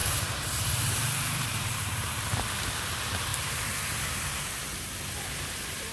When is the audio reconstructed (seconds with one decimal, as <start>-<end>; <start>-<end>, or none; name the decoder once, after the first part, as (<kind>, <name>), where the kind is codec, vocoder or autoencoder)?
0.0-2.4 (vocoder, BigVGAN v2); 3.3-3.8

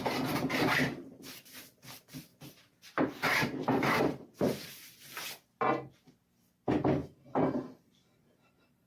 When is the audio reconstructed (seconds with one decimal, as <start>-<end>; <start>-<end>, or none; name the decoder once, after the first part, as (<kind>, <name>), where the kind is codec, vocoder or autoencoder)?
2.3-4.7 (vocoder, BigVGAN v2); 7.0-8.9

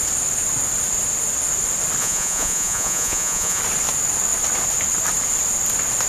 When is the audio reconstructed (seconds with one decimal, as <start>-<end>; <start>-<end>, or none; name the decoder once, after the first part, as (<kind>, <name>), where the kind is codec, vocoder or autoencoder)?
2.0-3.6 (vocoder, Vocos)

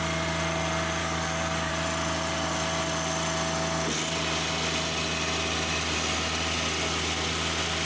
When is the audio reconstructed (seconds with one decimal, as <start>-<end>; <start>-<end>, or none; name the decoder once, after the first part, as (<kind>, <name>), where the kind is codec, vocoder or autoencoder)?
1.0-1.7 (codec, DAC)

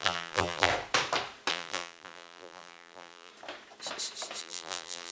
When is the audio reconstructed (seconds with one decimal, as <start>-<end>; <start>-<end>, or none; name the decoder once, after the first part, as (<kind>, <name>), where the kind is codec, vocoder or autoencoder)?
0.0-0.7 (vocoder, BigVGAN v2); 1.5-3.3; 4.4-5.1

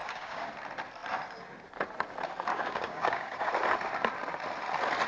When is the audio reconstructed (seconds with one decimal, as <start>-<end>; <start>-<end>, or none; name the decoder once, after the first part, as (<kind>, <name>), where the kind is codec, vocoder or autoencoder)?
0.0-0.5 (codec, DAC); 2.5-3.5

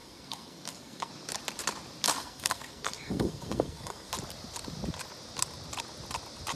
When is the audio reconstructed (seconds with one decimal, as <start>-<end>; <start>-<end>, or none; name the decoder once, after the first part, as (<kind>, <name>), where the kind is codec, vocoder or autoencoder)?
0.0-1.1 (codec, SNAC); 2.1-4.1

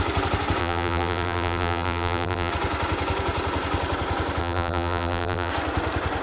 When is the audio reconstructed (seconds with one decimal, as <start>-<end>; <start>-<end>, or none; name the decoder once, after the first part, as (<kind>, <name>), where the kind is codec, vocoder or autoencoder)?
0.6-2.5 (vocoder, BigVGAN v2); 4.4-5.5